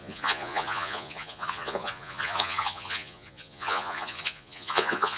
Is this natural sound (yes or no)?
no